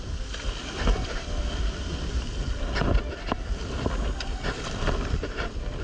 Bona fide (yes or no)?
yes